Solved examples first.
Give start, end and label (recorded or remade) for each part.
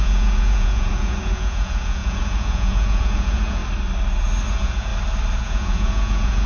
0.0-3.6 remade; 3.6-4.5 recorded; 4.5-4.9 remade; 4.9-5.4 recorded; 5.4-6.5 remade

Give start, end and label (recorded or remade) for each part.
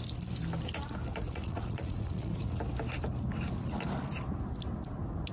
0.0-1.1 recorded; 1.1-2.6 remade; 2.6-5.3 recorded